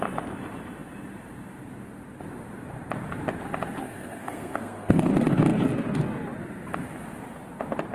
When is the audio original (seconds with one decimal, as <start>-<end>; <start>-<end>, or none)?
0.0-3.8; 5.1-7.9